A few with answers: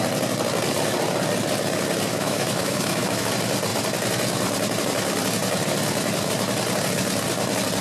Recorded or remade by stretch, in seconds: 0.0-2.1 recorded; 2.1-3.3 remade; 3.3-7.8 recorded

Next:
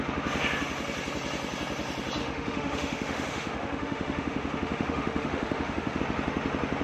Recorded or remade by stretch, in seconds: 0.0-2.2 recorded; 2.2-6.0 remade; 6.0-6.8 recorded

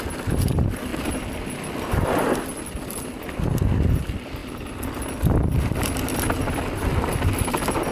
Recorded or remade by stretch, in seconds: 0.0-7.9 recorded